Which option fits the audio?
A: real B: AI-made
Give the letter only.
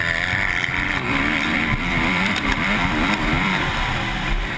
B